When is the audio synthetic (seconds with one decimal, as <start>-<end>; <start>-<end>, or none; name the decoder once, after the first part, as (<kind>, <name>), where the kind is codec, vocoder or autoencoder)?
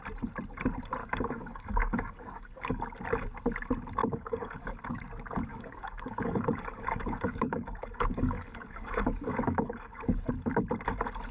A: 1.0-2.8 (codec, DAC); 4.0-5.0; 5.5-10.3